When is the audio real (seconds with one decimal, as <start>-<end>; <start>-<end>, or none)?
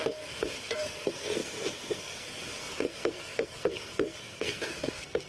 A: none